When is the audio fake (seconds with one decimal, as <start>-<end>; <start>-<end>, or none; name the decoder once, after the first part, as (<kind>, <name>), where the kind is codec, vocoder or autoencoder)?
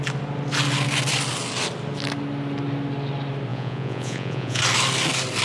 3.5-4.6 (vocoder, Vocos)